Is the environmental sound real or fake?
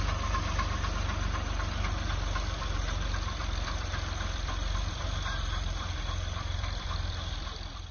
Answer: fake